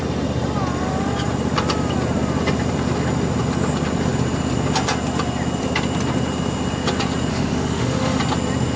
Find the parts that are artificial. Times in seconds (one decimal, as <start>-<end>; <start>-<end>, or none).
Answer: 7.3-8.2